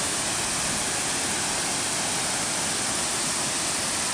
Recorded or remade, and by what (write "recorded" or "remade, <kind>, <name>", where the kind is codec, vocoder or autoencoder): recorded